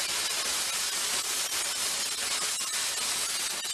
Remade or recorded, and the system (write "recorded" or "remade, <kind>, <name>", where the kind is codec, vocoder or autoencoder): recorded